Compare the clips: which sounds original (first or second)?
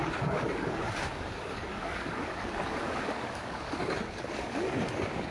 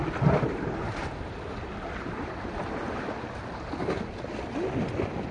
second